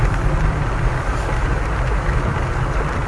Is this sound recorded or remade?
recorded